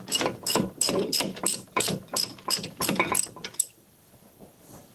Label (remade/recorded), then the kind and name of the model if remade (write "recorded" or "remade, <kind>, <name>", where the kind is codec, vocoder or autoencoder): remade, codec, DAC